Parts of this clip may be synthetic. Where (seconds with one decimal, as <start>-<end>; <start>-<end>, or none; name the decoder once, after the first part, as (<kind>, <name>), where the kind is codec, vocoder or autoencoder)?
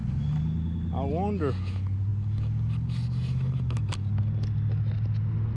none